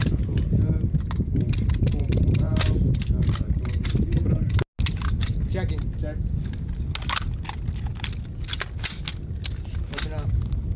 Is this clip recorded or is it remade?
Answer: recorded